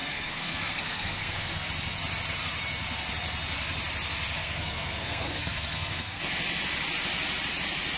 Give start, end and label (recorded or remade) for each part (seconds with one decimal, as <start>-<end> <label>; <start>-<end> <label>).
0.0-1.7 remade; 1.7-4.4 recorded; 4.4-6.2 remade; 6.2-8.0 recorded